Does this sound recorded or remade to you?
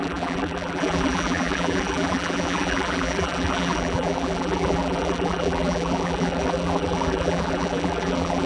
remade